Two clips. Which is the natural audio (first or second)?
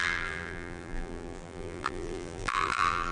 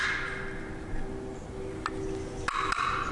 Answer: second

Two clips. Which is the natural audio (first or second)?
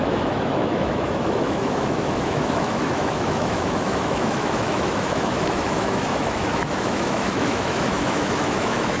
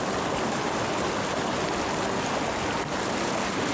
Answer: second